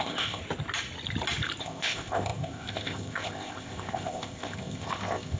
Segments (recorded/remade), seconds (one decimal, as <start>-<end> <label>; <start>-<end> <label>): 0.0-0.4 remade; 0.4-1.6 recorded; 1.6-5.4 remade